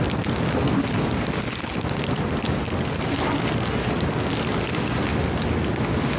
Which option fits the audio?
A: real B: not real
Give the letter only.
A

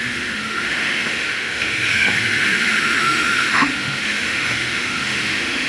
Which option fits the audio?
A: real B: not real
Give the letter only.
B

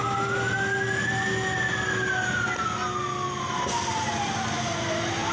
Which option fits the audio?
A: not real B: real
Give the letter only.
B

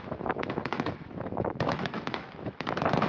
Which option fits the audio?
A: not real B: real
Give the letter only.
A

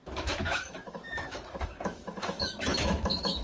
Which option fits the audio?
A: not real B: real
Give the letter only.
A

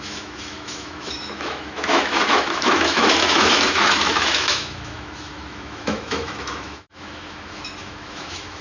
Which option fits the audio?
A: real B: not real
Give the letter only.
B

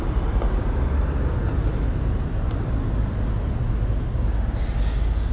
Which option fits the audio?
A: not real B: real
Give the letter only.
B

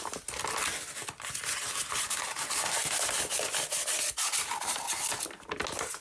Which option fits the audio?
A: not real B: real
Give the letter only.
B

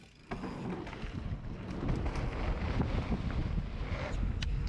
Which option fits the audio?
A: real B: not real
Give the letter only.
A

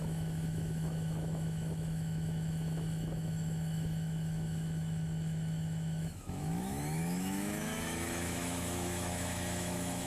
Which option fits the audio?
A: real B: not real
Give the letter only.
B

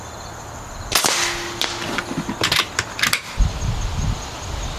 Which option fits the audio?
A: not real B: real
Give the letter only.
B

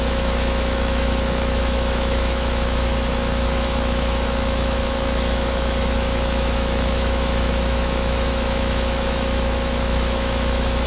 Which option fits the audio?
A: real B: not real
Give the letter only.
B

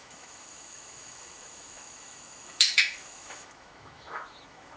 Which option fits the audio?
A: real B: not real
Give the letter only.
B